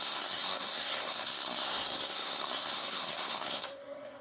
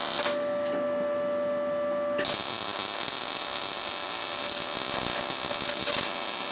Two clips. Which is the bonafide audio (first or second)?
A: second